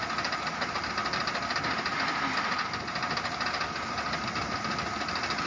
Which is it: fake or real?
real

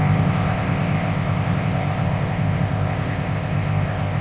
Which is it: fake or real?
fake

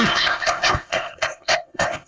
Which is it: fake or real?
fake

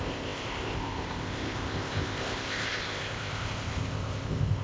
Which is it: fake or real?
fake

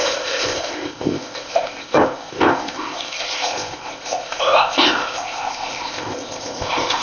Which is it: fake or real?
fake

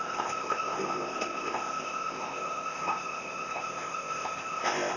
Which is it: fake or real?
fake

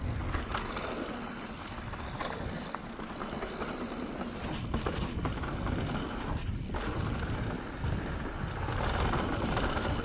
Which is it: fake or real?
real